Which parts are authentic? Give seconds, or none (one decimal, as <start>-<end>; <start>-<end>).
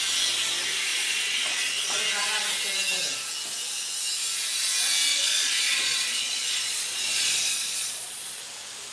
0.0-0.9; 2.0-5.1; 8.4-8.9